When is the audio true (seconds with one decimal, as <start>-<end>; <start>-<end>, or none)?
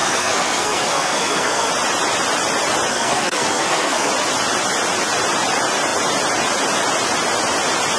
1.7-2.9; 4.1-8.0